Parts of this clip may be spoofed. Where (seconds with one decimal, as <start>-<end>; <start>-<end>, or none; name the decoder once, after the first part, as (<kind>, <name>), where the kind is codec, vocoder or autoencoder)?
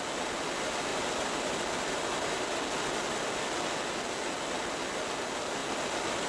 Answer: none